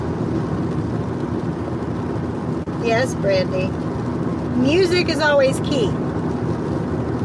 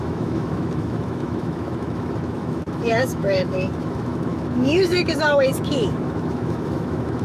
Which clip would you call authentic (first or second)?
first